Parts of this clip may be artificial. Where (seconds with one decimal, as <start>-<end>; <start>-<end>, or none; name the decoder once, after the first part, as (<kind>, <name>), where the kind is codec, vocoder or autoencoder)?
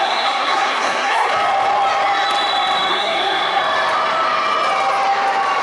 0.0-1.3 (codec, SNAC); 2.9-3.6